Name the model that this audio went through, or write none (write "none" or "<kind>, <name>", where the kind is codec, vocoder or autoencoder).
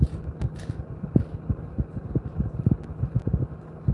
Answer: none